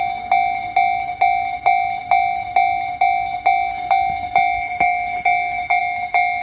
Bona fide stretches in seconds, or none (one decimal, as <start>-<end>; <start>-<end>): 0.0-6.4